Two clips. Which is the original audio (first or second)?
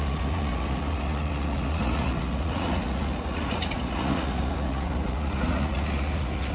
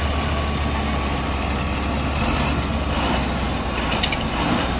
second